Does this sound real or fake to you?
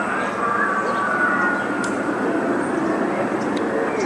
real